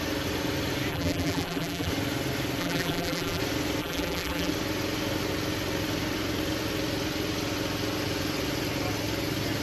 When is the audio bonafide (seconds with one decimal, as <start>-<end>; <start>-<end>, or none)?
0.0-0.9; 1.9-2.6; 3.4-3.8; 4.5-9.6